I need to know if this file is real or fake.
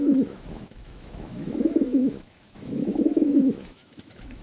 fake